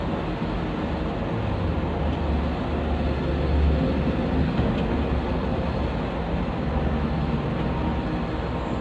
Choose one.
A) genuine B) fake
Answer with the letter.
A